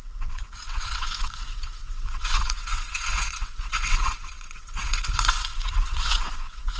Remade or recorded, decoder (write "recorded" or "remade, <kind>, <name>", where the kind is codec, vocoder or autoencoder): remade, vocoder, WaveNeXt